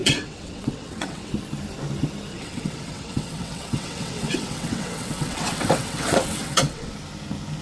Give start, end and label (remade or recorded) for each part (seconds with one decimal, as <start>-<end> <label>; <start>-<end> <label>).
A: 0.0-1.3 remade; 1.3-2.3 recorded; 2.3-6.9 remade; 6.9-7.6 recorded